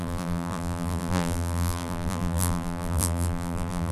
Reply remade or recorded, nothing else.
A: remade